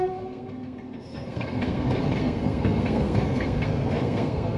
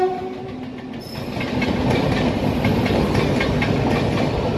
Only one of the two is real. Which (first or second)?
second